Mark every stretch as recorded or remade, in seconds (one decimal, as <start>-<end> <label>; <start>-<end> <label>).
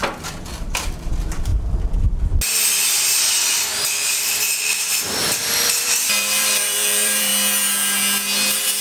0.0-1.5 remade; 1.5-4.8 recorded; 4.8-7.3 remade; 7.3-8.8 recorded